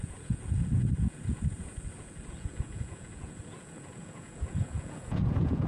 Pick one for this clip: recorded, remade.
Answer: remade